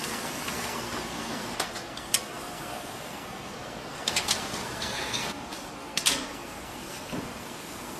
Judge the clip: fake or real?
fake